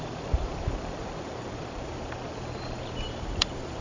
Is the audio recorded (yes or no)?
no